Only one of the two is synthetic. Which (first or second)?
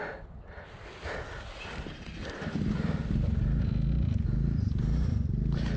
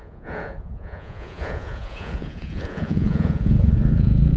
second